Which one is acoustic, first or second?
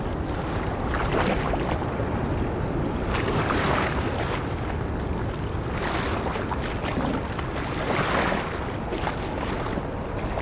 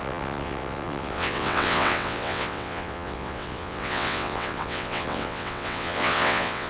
first